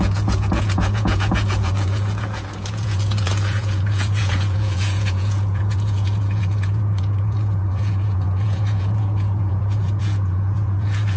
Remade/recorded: remade